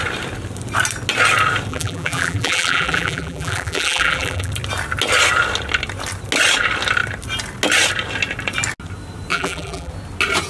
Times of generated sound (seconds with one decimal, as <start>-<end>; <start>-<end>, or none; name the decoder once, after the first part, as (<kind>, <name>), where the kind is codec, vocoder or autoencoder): 1.7-4.5 (vocoder, BigVGAN v2); 9.3-9.9